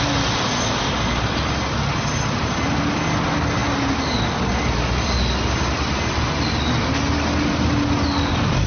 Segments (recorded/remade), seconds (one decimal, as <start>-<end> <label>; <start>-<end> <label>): 0.0-8.7 recorded